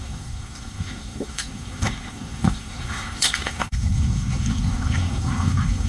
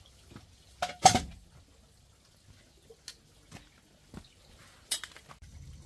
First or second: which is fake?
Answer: first